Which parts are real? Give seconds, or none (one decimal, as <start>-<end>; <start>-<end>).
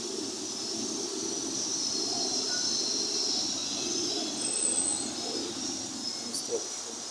0.0-3.6; 4.4-7.1